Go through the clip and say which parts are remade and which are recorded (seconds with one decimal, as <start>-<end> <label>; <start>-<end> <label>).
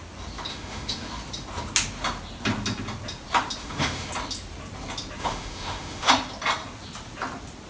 0.0-0.5 recorded; 0.5-1.1 remade; 1.1-3.6 recorded; 3.6-4.1 remade; 4.1-5.2 recorded; 5.2-6.1 remade; 6.1-7.7 recorded